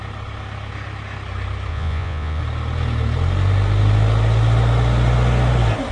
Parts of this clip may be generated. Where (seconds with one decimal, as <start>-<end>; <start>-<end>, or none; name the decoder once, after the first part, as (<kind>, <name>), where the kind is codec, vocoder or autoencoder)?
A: 1.7-2.4 (vocoder, Vocos)